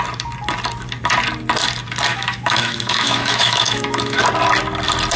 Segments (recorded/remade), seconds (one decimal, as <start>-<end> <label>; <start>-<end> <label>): 0.0-2.1 recorded; 2.1-4.2 remade; 4.2-5.2 recorded